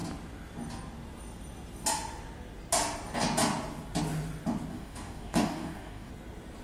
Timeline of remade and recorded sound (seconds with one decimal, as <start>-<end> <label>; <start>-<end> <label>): 0.0-4.7 recorded; 4.7-6.1 remade; 6.1-6.6 recorded